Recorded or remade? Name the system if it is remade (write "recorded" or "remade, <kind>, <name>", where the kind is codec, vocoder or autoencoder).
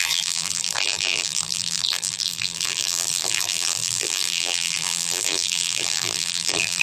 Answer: remade, vocoder, BigVGAN v2